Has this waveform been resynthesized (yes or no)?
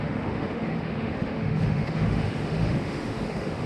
yes